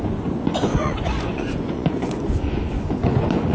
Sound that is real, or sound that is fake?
fake